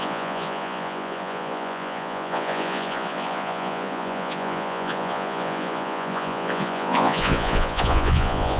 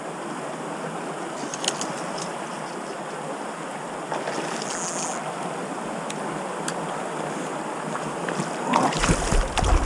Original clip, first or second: second